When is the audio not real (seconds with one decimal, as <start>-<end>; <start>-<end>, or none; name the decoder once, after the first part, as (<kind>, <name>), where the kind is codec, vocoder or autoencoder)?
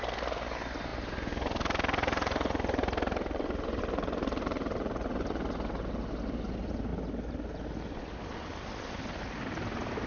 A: none